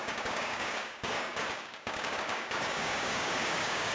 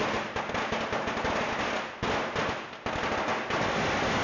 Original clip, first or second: second